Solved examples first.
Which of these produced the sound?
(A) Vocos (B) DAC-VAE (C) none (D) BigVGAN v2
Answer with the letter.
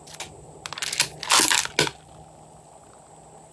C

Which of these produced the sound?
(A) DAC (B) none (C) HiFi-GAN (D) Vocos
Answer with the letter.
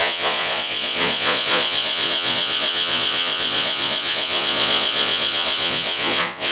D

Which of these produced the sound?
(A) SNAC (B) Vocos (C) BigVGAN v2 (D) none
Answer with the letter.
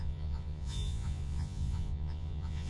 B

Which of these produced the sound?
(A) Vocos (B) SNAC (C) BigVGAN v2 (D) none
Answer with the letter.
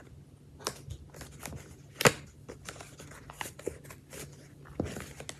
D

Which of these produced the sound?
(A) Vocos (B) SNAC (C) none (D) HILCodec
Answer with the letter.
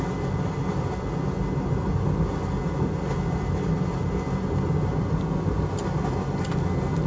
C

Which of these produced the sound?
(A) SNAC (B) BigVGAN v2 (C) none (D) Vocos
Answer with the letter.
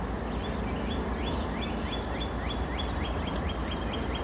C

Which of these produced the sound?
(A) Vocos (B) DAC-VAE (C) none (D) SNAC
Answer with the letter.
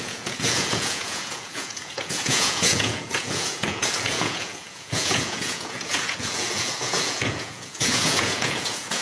A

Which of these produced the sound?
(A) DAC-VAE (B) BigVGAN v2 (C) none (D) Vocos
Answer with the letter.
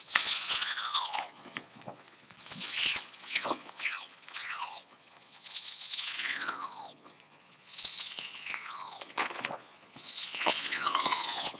D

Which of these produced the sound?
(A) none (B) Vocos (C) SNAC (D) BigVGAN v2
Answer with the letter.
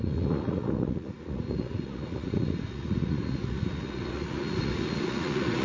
B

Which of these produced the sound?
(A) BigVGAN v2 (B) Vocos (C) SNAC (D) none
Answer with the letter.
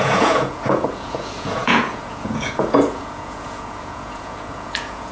B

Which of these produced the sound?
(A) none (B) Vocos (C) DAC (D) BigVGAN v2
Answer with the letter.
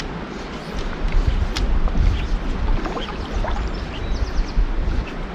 A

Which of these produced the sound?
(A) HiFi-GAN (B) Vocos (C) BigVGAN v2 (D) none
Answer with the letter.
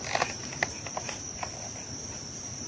D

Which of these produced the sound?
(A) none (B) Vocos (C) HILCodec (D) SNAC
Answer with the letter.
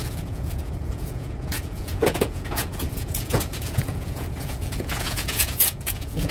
B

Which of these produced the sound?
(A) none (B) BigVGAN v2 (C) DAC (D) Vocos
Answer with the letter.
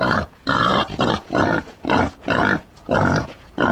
D